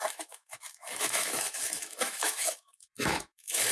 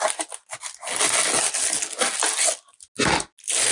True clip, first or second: second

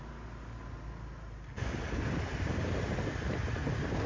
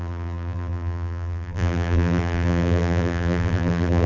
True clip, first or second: first